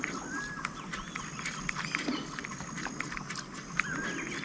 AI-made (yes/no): no